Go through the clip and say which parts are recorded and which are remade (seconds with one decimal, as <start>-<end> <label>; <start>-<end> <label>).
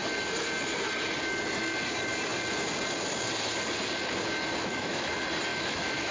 0.0-4.6 recorded; 4.6-5.1 remade; 5.1-5.5 recorded; 5.5-6.1 remade